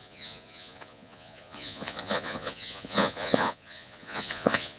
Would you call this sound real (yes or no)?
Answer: no